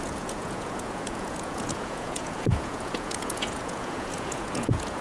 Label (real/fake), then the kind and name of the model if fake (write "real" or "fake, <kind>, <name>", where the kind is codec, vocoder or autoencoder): fake, vocoder, Vocos